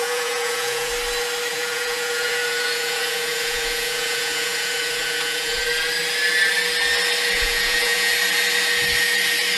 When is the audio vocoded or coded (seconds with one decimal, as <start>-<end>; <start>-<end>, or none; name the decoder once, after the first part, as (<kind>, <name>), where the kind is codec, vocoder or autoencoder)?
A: 0.0-0.9 (vocoder, Vocos); 1.5-5.6; 7.3-8.1